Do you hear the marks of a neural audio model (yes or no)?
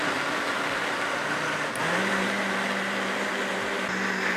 no